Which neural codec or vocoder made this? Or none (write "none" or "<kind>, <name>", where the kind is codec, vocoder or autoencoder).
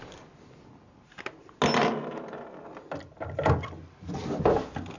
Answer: none